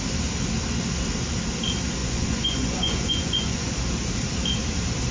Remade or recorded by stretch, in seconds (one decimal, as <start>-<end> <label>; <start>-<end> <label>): 0.0-2.0 recorded; 2.0-3.7 remade; 3.7-5.1 recorded